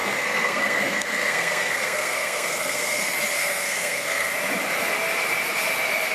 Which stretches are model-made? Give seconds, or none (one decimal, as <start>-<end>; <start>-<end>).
0.0-3.0; 3.4-4.3